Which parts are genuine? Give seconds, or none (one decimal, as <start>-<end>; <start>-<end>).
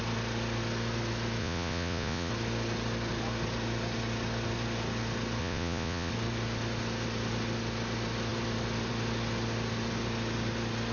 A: 0.0-1.4; 2.3-5.4; 6.1-10.9